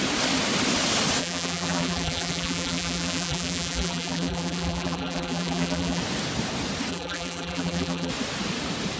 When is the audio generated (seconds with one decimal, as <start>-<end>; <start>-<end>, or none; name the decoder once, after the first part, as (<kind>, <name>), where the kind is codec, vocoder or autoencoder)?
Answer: 1.2-6.0 (vocoder, BigVGAN v2); 6.9-8.1